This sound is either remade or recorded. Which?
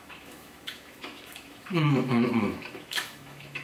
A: remade